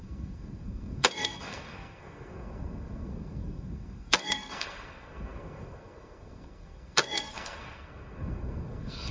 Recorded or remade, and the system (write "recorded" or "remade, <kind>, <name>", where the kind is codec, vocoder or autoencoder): remade, codec, SNAC